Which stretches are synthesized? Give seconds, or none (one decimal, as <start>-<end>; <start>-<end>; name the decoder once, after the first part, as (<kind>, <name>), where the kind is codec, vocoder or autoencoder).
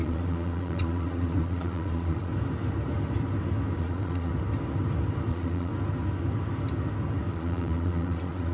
0.0-2.3 (vocoder, Vocos); 3.8-4.3; 5.3-5.7; 7.3-8.5